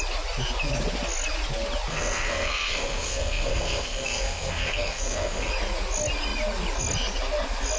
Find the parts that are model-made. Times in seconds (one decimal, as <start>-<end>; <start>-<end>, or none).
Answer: 1.9-5.5